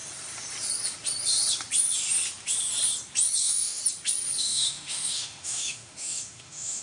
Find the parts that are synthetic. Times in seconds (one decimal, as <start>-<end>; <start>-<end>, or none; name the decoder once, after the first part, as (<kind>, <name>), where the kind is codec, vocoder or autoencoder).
3.4-3.8 (autoencoder, DAC-VAE); 4.4-6.8